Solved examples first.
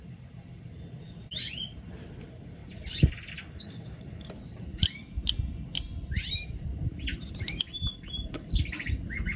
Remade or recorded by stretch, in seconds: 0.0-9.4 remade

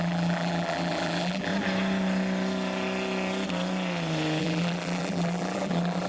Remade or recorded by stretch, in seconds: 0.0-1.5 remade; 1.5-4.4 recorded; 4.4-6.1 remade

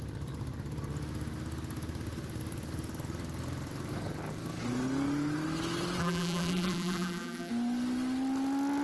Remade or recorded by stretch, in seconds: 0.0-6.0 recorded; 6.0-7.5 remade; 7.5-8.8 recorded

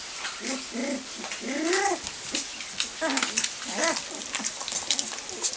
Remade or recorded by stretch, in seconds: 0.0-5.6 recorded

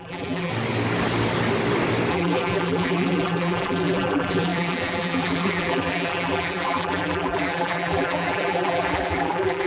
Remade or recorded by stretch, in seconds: 0.0-0.5 remade; 0.5-2.1 recorded; 2.1-9.7 remade

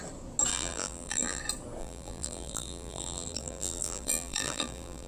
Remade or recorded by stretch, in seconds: 0.0-0.5 recorded; 0.5-1.4 remade; 1.4-1.8 recorded; 1.8-5.1 remade